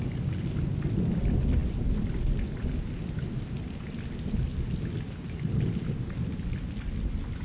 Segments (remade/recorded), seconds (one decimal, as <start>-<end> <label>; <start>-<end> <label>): 0.0-7.4 recorded